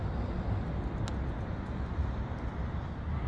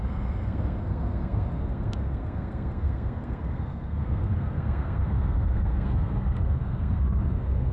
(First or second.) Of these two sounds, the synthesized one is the second